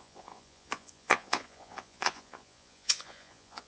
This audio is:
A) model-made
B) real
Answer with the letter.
A